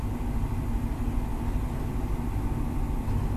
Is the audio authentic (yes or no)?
yes